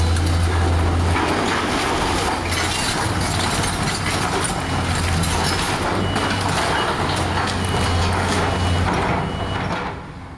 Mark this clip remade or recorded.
recorded